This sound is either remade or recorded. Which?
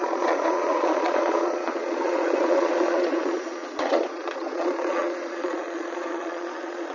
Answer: remade